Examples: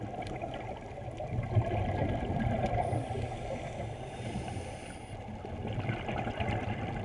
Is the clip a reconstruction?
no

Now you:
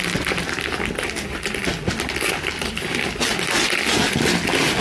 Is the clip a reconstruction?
no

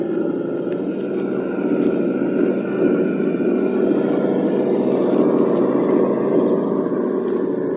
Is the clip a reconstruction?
no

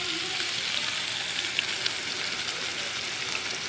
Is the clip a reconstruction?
no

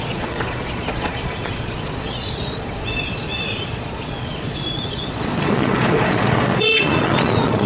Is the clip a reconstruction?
yes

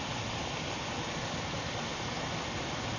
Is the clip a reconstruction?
no